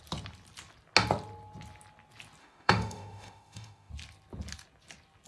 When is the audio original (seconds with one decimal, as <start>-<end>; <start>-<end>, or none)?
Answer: 0.0-2.4; 3.9-5.3